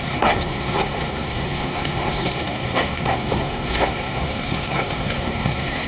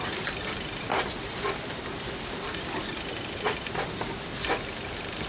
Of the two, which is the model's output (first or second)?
first